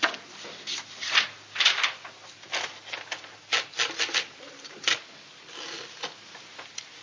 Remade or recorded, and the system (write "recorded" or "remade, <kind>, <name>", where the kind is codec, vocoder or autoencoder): recorded